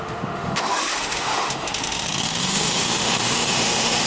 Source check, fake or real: fake